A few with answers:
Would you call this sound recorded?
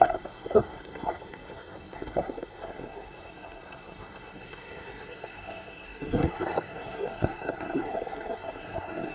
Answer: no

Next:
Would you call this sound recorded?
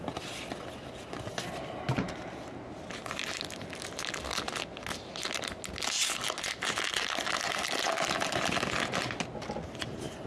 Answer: yes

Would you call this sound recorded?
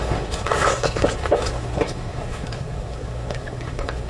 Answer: no